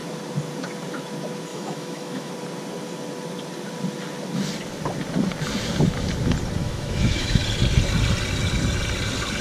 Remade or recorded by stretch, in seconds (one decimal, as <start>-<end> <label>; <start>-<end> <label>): 0.0-1.5 recorded; 1.5-2.3 remade; 2.3-6.6 recorded; 6.6-7.4 remade; 7.4-9.4 recorded